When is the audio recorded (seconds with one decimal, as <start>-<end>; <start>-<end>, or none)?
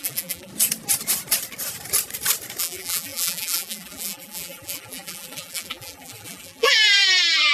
0.5-2.6